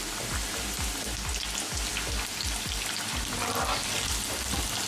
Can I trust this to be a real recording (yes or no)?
yes